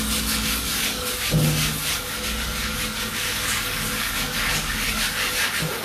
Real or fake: fake